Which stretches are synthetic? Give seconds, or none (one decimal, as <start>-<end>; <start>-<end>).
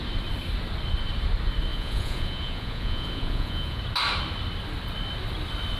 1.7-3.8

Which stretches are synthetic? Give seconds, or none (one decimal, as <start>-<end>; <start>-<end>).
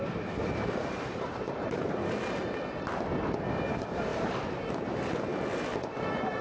0.0-2.0; 3.5-5.3; 5.8-6.4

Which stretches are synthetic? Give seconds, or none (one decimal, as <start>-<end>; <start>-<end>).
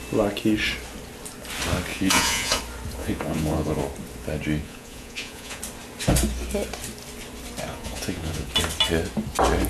1.9-2.6; 3.0-3.8; 4.6-5.6; 7.7-8.5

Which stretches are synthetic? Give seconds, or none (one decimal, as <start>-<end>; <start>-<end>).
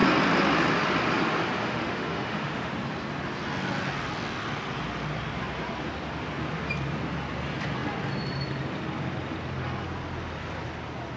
1.6-2.7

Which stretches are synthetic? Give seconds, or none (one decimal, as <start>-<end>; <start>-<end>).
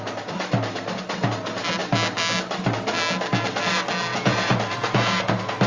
4.1-5.3